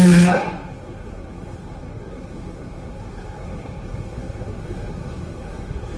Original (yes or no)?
no